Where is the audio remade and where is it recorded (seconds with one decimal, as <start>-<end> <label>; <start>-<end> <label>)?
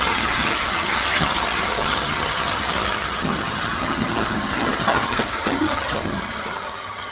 0.0-7.1 remade